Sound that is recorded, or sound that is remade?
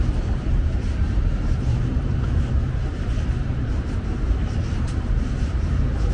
remade